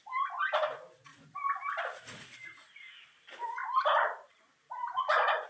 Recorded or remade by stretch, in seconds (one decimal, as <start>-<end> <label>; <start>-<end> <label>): 0.0-3.6 recorded; 3.6-4.4 remade; 4.4-5.5 recorded